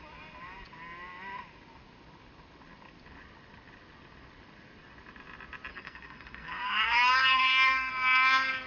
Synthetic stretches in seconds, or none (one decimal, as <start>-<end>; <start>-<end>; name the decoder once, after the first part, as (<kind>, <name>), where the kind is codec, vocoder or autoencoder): 5.7-7.9 (codec, SNAC)